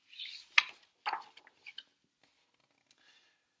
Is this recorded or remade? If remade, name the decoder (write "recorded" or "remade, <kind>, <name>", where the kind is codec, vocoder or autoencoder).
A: recorded